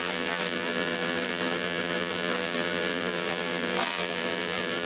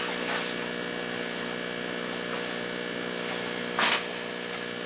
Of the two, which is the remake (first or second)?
first